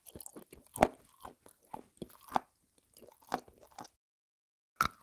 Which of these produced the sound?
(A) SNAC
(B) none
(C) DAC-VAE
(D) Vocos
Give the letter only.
B